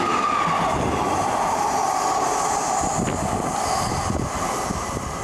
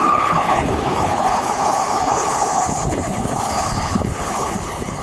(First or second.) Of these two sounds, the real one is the first